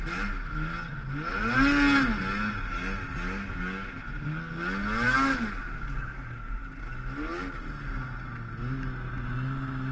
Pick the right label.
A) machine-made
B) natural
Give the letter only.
B